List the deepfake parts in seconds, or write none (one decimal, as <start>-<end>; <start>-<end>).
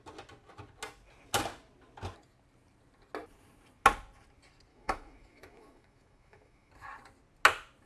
4.7-6.7